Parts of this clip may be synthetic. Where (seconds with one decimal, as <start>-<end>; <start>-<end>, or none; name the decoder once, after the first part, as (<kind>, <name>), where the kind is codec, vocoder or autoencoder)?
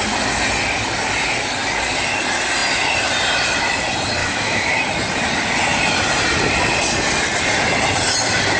4.2-4.8 (autoencoder, DAC-VAE)